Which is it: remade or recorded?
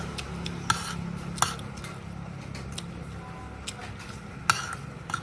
recorded